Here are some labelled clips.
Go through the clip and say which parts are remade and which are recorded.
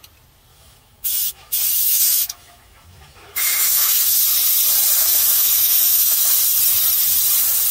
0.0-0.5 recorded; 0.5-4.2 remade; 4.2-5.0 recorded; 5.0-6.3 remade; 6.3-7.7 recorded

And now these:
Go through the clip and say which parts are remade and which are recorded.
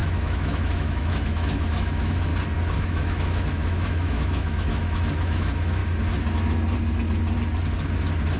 0.0-2.3 remade; 2.3-2.8 recorded; 2.8-5.8 remade; 5.8-8.4 recorded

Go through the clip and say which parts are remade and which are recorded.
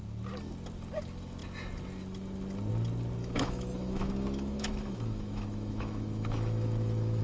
0.0-3.2 recorded; 3.2-7.2 remade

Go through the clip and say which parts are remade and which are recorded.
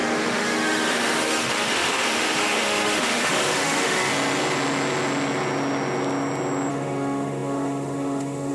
0.0-4.1 remade; 4.1-6.7 recorded; 6.7-8.5 remade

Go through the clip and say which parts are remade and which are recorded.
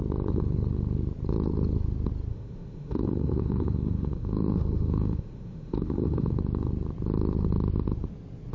0.0-2.3 recorded; 2.3-6.3 remade; 6.3-8.5 recorded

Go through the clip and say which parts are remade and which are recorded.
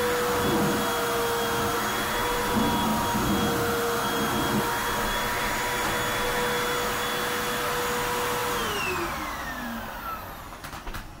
0.0-11.2 recorded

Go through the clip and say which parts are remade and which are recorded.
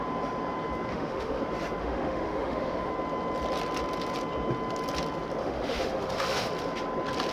0.0-0.9 recorded; 0.9-1.4 remade; 1.4-1.8 recorded; 1.8-2.9 remade; 2.9-5.4 recorded; 5.4-6.5 remade; 6.5-7.3 recorded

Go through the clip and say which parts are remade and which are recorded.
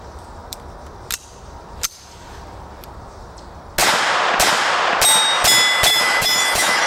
0.0-5.9 recorded; 5.9-6.9 remade